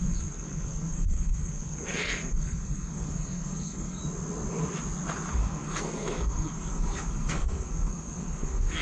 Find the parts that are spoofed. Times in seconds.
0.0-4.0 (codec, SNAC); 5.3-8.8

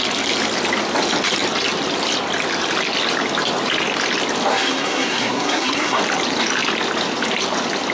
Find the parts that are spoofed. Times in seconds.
4.5-6.0 (codec, SNAC)

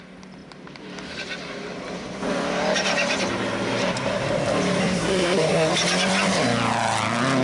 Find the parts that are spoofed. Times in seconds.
4.8-5.7 (codec, SNAC)